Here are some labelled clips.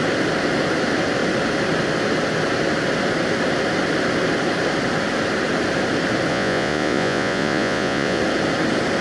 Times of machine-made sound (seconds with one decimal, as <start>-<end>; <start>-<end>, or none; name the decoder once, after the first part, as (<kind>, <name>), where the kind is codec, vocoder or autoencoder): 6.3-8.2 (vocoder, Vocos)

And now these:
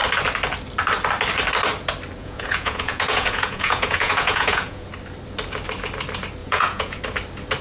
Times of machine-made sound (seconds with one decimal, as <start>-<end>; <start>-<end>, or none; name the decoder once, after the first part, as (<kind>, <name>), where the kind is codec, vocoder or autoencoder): 2.2-4.9 (vocoder, Vocos); 6.4-7.0

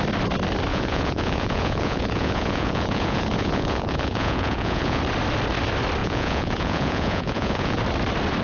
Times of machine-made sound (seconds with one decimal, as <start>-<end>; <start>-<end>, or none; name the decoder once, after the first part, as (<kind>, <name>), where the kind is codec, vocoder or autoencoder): 0.7-5.0 (vocoder, Vocos); 6.0-7.8